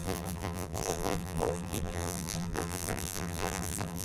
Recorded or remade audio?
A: remade